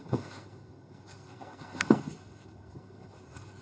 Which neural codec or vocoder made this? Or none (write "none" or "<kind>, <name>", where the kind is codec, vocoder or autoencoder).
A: codec, SNAC